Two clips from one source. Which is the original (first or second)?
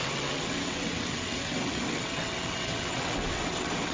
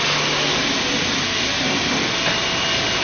second